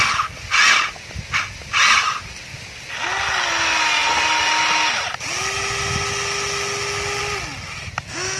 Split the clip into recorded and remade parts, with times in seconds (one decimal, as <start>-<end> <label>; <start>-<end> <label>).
0.0-8.4 recorded